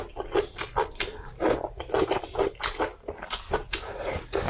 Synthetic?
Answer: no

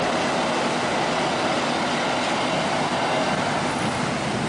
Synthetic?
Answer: no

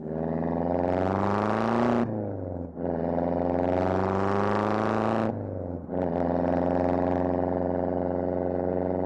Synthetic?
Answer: no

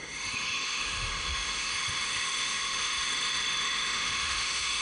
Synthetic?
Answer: yes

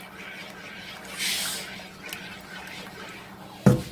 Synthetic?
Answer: no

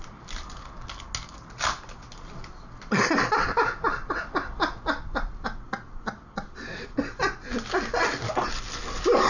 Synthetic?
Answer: no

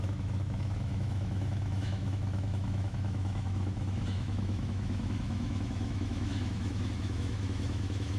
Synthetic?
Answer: yes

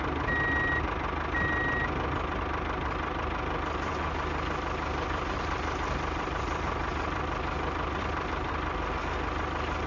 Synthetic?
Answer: no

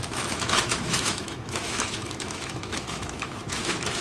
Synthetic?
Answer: yes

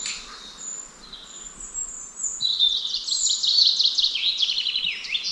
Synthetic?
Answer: no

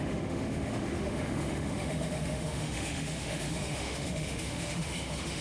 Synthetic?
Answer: yes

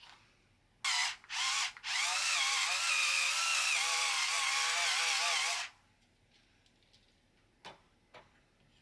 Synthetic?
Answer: no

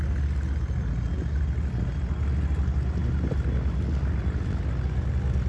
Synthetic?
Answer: no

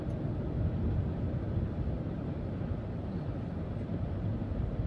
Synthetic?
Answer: no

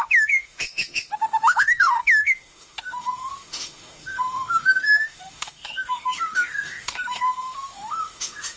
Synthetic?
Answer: yes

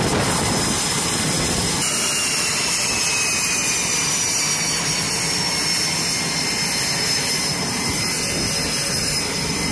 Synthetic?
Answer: no